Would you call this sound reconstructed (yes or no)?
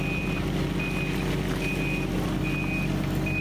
no